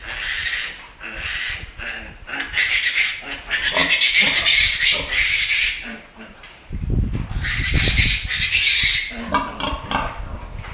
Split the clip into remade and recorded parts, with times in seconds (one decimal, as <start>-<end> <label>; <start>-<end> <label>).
0.0-0.4 recorded; 0.4-3.1 remade; 3.1-5.2 recorded; 5.2-7.6 remade; 7.6-10.7 recorded